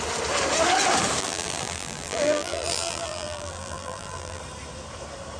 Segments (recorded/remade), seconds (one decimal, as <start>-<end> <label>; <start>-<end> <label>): 0.0-1.2 recorded; 1.2-4.4 remade; 4.4-5.4 recorded